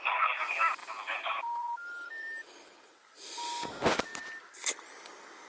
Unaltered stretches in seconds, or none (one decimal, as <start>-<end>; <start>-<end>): 0.0-0.8; 2.8-5.5